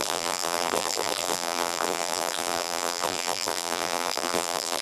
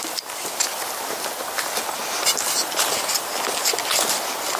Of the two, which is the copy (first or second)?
first